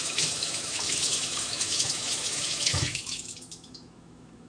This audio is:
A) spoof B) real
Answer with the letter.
A